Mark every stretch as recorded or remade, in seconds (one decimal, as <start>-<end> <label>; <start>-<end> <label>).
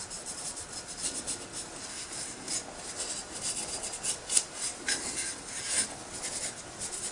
0.0-1.9 recorded; 1.9-2.5 remade; 2.5-7.1 recorded